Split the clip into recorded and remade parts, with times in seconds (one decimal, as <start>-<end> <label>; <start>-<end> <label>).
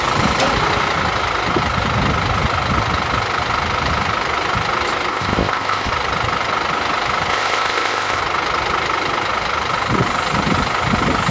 0.0-5.1 recorded; 5.1-5.9 remade; 5.9-7.3 recorded; 7.3-8.2 remade; 8.2-11.3 recorded